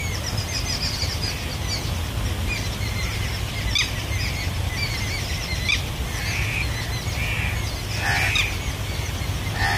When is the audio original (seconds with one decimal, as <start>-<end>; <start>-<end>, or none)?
0.0-9.8